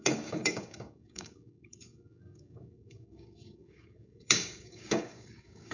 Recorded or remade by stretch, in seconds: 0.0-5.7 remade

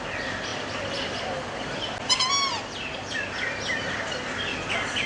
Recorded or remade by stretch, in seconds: 0.0-5.1 recorded

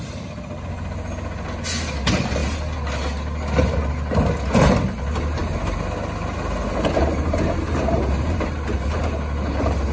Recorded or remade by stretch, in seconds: 0.0-9.9 recorded

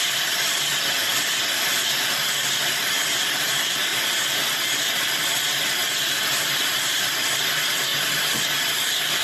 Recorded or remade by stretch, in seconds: 0.0-3.9 remade; 3.9-4.6 recorded; 4.6-7.9 remade; 7.9-8.5 recorded; 8.5-9.2 remade

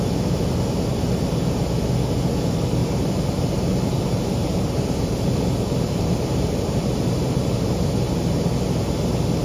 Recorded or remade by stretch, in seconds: 0.0-2.8 recorded; 2.8-7.9 remade; 7.9-9.4 recorded

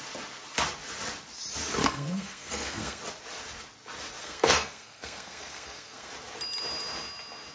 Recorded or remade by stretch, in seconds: 0.0-1.8 recorded; 1.8-3.0 remade; 3.0-4.2 recorded; 4.2-6.1 remade; 6.1-7.5 recorded

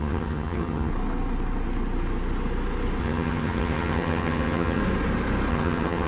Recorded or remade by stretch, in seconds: 0.0-0.9 remade; 0.9-3.0 recorded; 3.0-4.8 remade; 4.8-5.5 recorded; 5.5-6.1 remade

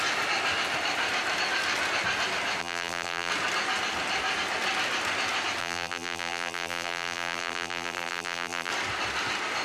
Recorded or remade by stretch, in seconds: 0.0-2.6 recorded; 2.6-3.3 remade; 3.3-5.6 recorded; 5.6-8.7 remade; 8.7-9.6 recorded